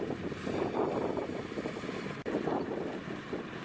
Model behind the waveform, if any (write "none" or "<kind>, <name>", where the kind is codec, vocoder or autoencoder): none